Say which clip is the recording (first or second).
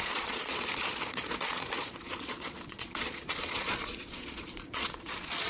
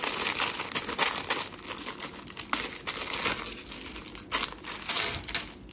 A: second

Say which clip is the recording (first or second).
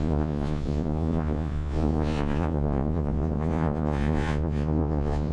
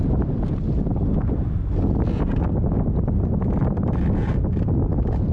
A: second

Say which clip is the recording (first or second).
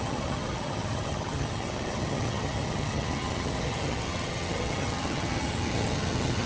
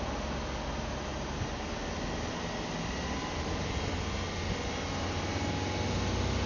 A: second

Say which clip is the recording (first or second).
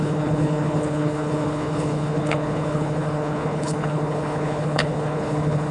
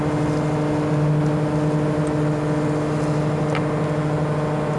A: second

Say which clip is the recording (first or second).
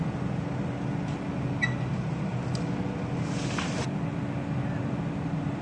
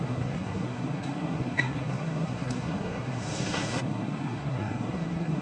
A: first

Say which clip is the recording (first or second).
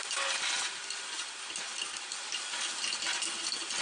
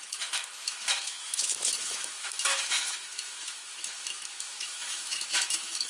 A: first